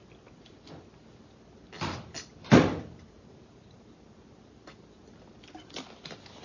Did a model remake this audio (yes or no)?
no